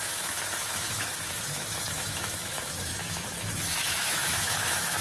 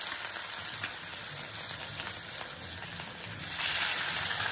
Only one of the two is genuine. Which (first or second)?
second